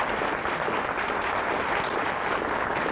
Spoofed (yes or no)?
no